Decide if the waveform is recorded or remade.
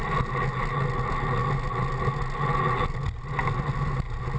recorded